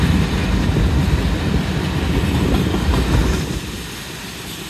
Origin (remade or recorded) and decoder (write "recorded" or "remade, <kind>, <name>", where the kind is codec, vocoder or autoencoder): recorded